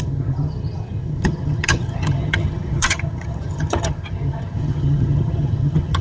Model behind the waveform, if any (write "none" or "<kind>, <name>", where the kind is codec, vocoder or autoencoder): vocoder, HiFi-GAN